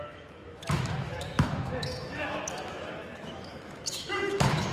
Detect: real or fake fake